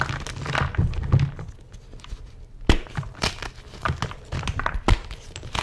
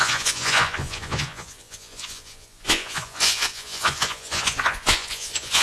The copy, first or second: second